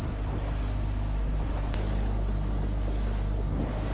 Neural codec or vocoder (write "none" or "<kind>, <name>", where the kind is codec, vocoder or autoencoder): none